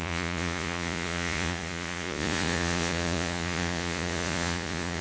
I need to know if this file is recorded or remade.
remade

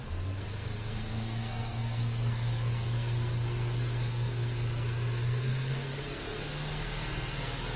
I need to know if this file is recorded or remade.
remade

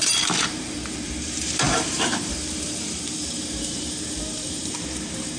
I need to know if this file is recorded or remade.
remade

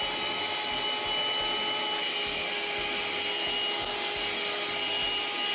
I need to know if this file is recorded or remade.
recorded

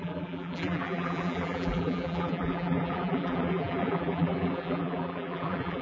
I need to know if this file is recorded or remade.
remade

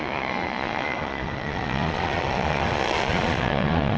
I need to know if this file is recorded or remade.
remade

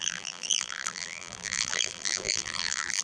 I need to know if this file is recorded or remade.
remade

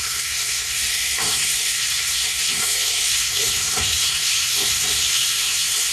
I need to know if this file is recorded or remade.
remade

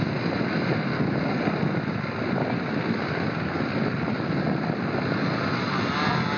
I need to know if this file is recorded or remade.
recorded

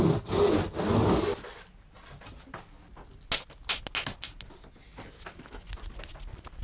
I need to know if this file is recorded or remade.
recorded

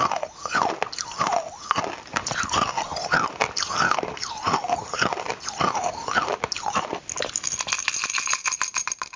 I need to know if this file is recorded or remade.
recorded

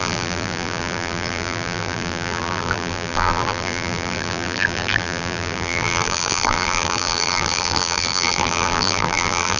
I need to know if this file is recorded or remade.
remade